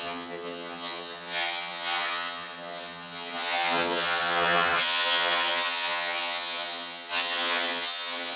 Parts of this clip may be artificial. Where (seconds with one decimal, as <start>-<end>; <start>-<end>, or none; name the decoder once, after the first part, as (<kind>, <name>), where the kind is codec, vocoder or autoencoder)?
0.0-8.4 (vocoder, HiFi-GAN)